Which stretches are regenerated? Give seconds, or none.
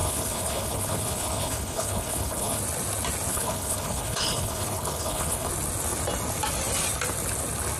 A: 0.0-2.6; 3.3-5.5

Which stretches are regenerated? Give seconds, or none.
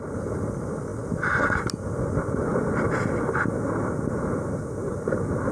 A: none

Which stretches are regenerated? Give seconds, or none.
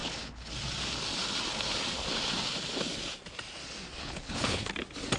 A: 0.0-0.5; 4.0-4.7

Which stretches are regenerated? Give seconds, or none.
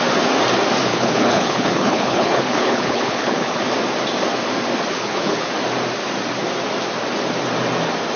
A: 0.9-3.6; 4.9-5.5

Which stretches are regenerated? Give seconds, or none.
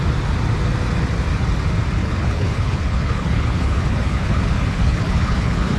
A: 2.0-5.8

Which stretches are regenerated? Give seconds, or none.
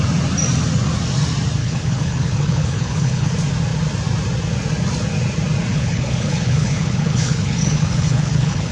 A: 1.6-3.3; 5.7-8.7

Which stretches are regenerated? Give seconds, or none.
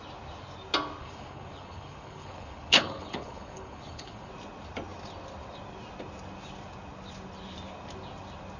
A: 1.0-4.3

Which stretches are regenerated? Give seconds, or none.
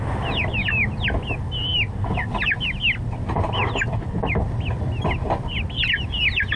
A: none